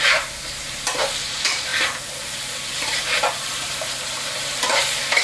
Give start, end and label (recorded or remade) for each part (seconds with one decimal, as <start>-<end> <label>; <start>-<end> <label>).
0.0-5.2 remade